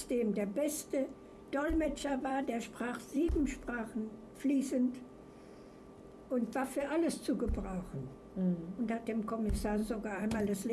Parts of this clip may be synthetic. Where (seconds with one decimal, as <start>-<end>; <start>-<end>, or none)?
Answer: 1.3-6.0; 9.8-10.7